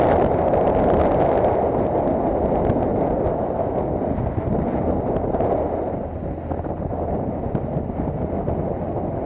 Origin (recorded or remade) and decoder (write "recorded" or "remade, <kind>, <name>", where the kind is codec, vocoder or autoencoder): recorded